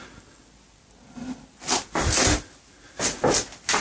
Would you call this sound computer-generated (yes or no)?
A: no